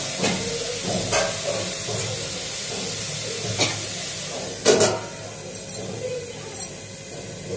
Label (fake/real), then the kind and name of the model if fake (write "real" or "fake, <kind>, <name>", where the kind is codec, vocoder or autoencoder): real